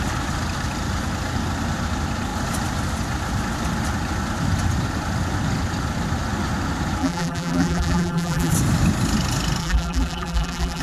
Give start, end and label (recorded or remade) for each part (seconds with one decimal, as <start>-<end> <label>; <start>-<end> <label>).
0.0-7.0 recorded; 7.0-8.5 remade; 8.5-9.6 recorded; 9.6-10.8 remade